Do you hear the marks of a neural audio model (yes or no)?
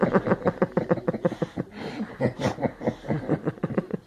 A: no